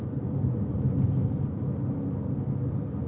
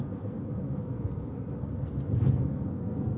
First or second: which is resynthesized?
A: second